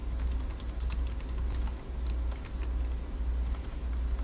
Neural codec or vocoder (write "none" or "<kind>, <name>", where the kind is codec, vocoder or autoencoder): none